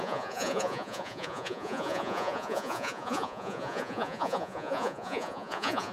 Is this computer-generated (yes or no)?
yes